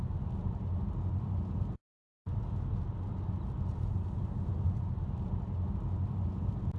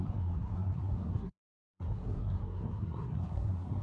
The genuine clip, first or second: first